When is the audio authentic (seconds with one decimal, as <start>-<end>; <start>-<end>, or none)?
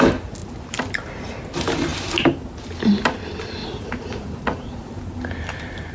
0.0-3.6; 4.9-5.9